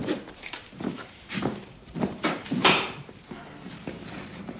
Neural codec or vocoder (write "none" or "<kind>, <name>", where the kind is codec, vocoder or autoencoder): vocoder, BigVGAN v2